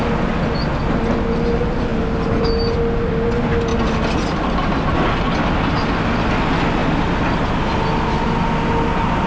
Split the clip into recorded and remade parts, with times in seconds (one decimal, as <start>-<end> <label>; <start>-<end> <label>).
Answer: 0.0-9.3 recorded